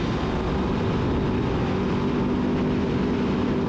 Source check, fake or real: real